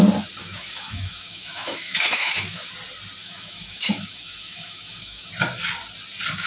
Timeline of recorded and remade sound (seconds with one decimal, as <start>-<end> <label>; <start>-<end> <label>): 0.0-0.4 recorded; 0.4-2.7 remade; 2.7-3.2 recorded; 3.2-5.3 remade; 5.3-6.5 recorded

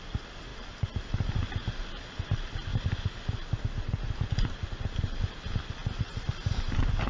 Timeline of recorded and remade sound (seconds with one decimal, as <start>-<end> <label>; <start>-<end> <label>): 0.0-7.1 recorded